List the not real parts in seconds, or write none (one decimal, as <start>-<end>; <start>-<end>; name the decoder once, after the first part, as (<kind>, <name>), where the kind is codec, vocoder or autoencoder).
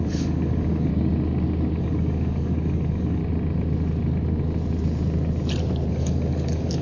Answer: 0.0-0.9 (codec, DAC); 1.8-3.2; 5.9-6.8